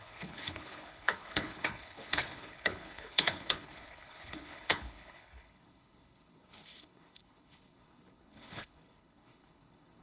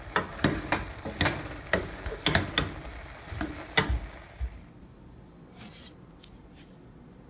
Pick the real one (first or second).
second